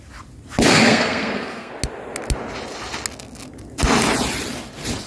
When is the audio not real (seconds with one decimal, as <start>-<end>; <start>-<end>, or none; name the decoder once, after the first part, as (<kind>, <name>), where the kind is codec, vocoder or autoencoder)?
0.7-1.7 (codec, SNAC)